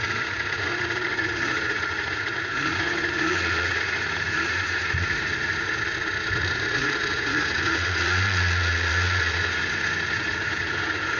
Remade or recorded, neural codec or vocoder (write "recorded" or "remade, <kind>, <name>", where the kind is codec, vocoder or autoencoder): remade, vocoder, Vocos